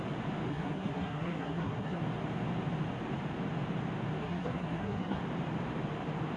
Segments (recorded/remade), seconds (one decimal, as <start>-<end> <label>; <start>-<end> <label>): 0.0-0.5 recorded; 0.5-2.0 remade; 2.0-4.2 recorded; 4.2-5.2 remade; 5.2-6.4 recorded